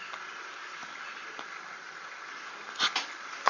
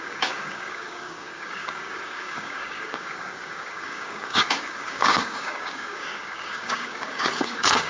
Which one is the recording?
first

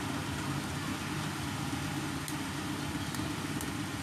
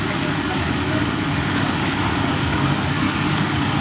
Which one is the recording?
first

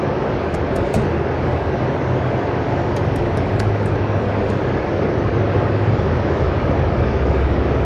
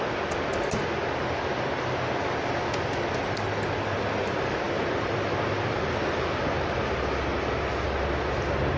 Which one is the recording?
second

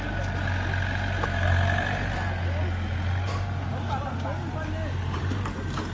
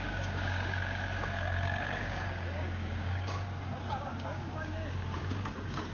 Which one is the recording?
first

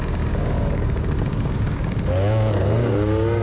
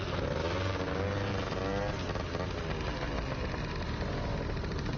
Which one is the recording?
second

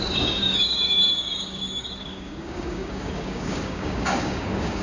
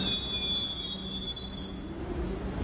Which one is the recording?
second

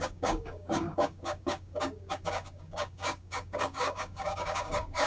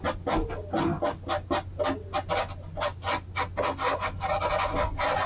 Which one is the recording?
second